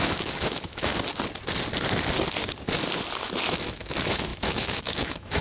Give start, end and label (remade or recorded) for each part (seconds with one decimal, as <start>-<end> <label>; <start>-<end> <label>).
0.0-0.9 remade; 0.9-3.4 recorded; 3.4-5.4 remade